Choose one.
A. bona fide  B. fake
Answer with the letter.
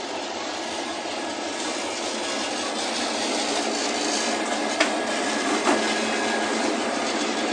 A